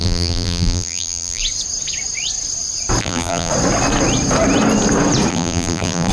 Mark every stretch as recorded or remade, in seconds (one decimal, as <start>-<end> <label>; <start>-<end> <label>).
0.0-1.4 remade; 1.4-3.0 recorded; 3.0-3.5 remade; 3.5-5.3 recorded; 5.3-6.1 remade